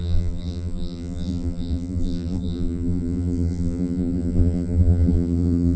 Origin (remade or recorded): remade